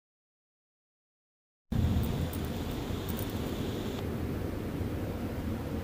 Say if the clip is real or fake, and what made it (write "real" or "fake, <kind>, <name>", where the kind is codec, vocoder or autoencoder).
real